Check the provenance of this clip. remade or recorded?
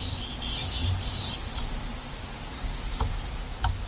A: recorded